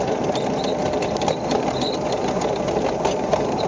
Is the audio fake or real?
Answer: real